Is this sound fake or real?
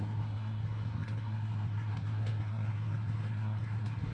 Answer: fake